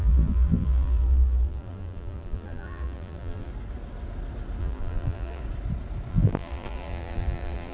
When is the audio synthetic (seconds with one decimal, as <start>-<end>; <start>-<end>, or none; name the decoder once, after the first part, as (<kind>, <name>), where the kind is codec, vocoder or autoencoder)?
0.0-3.5 (vocoder, BigVGAN v2); 4.6-5.4; 6.1-7.7